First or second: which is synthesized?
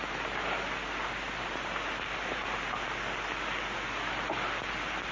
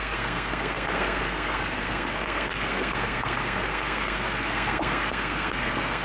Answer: second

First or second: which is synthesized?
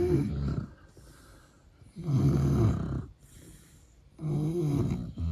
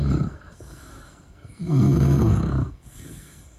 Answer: second